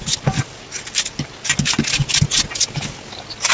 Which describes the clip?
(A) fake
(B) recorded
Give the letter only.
B